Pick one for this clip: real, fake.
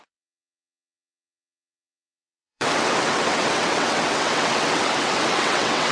fake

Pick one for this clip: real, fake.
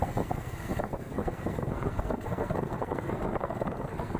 fake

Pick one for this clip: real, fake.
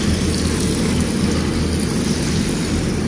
real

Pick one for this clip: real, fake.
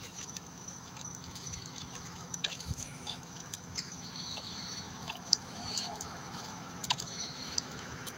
fake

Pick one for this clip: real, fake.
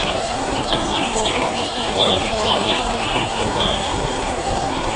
fake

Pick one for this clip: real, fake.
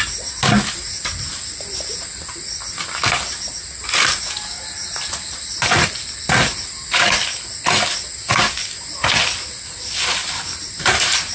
real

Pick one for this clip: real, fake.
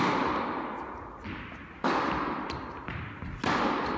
real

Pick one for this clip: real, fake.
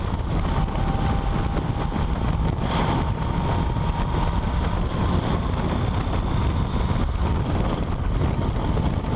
real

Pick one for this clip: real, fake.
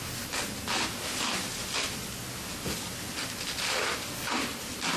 real